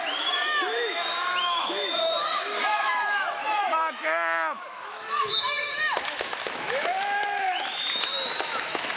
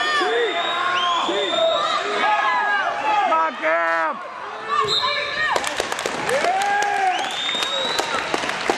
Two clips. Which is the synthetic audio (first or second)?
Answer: first